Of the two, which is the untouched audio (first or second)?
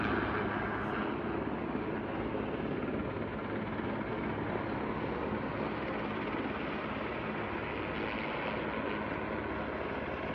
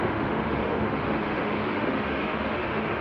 first